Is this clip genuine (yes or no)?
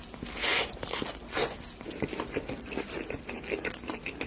yes